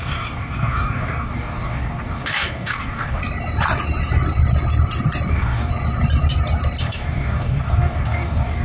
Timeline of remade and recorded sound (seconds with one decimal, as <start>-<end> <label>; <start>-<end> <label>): 0.0-3.2 remade; 3.2-5.3 recorded; 5.3-5.7 remade; 5.7-6.8 recorded; 6.8-8.6 remade